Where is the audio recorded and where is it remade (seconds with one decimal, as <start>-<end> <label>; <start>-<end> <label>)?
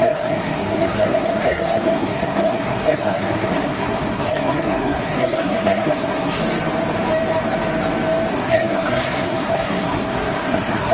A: 0.0-6.4 remade; 6.4-8.3 recorded; 8.3-10.9 remade